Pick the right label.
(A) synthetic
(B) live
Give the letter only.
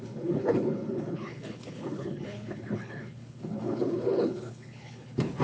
A